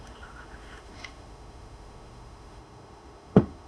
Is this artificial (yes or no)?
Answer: yes